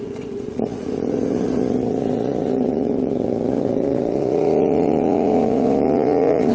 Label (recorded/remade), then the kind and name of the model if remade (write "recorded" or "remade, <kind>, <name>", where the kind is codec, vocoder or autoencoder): remade, vocoder, Vocos